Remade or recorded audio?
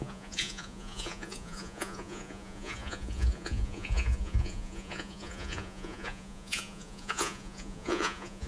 remade